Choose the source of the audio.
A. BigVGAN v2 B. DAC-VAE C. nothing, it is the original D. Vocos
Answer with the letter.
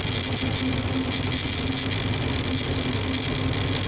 C